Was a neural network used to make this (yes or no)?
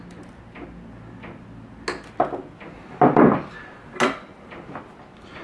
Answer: no